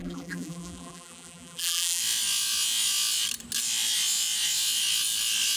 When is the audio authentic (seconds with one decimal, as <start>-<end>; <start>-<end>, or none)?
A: 2.0-5.6